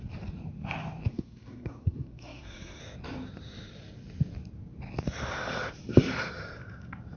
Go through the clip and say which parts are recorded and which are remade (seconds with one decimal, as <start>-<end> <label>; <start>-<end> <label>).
0.0-1.1 recorded; 1.1-2.8 remade; 2.8-7.2 recorded